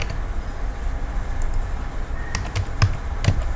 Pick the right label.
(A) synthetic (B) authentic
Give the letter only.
B